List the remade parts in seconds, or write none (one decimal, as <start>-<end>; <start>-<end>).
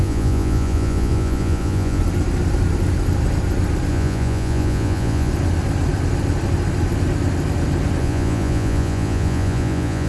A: 0.0-2.0; 3.9-5.3; 8.0-10.1